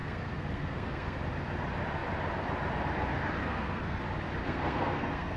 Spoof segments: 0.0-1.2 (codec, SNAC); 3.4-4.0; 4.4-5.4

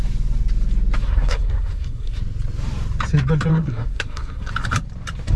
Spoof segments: 1.0-2.2 (codec, SNAC); 3.5-4.5

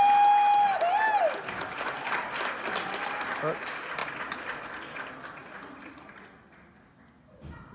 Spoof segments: 1.6-3.3 (vocoder, BigVGAN v2); 5.4-6.1

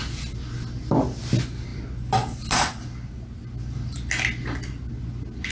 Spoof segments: none

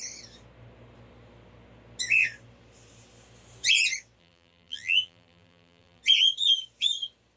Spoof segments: 4.2-6.0 (vocoder, BigVGAN v2)

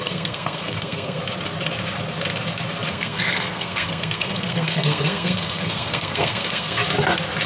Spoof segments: 0.0-1.2 (codec, SNAC); 2.9-6.8